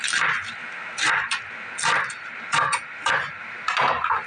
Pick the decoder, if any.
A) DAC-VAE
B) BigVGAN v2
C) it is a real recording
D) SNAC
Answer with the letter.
C